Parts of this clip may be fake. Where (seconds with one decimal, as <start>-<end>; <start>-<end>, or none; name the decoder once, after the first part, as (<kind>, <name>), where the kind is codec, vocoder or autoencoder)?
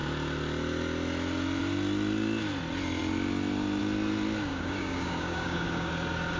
4.5-5.9 (codec, DAC)